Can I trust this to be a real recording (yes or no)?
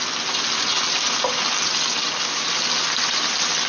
yes